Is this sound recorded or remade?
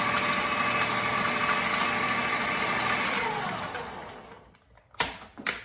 recorded